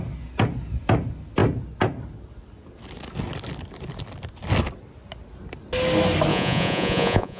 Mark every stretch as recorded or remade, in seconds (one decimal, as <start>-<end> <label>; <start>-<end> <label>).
0.0-6.3 recorded; 6.3-7.4 remade